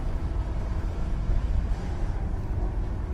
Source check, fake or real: real